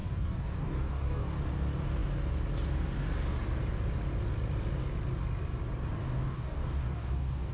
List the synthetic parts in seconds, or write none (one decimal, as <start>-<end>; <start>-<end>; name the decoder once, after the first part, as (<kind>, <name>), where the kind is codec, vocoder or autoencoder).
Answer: 0.0-1.4 (codec, DAC); 6.0-7.5